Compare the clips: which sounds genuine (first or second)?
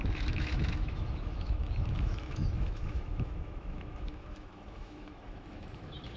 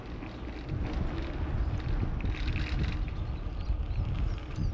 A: second